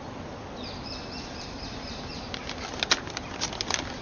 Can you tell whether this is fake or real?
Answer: real